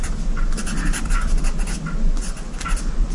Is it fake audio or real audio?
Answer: real